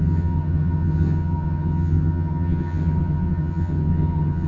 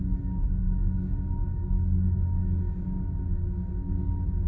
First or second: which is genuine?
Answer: second